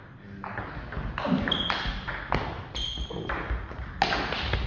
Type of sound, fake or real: real